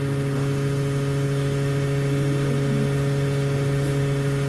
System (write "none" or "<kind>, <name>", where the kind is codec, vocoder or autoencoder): none